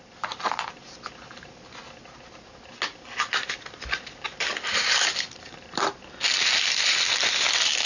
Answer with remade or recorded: recorded